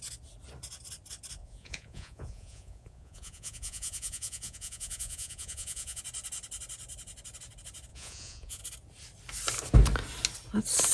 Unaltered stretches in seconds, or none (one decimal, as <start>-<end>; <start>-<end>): 0.0-1.4; 6.0-7.9; 8.6-10.9